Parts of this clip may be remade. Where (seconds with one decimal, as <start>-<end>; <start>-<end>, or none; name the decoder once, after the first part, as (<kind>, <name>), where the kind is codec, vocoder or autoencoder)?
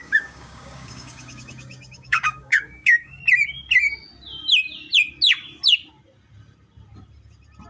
0.0-3.2 (codec, DAC)